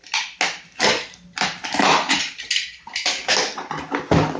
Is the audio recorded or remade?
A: recorded